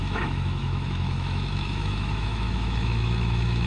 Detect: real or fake fake